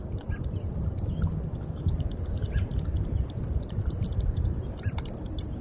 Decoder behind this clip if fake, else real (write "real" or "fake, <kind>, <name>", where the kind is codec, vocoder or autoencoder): real